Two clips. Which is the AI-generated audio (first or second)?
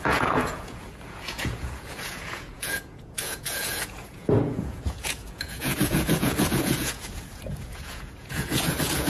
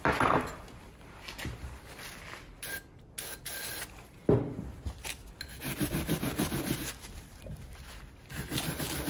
first